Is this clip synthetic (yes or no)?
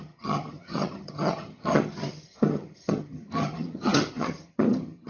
yes